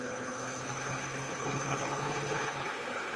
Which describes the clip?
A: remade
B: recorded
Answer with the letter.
A